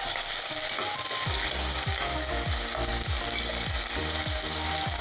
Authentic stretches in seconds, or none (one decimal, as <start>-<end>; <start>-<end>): 0.0-5.0